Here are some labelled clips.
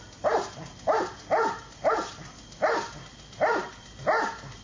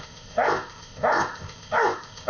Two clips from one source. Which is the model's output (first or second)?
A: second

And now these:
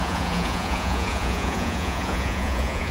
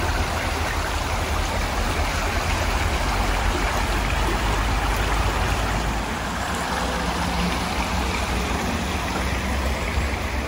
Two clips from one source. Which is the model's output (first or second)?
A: first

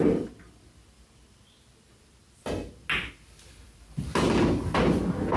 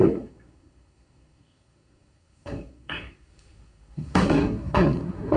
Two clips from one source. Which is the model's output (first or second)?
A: second